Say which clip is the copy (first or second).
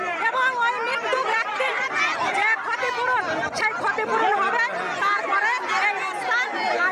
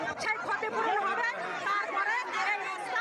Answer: second